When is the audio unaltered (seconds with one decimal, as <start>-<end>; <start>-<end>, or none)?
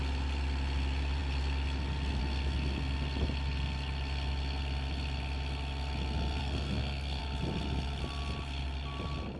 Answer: 0.0-6.4; 7.2-9.4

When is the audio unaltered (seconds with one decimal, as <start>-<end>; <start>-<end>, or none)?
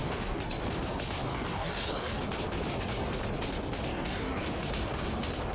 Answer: 0.6-1.3; 2.2-3.9; 4.4-5.5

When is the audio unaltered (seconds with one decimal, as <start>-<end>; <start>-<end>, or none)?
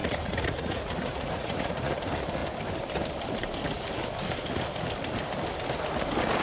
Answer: 1.9-6.4